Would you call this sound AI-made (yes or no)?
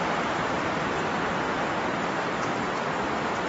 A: no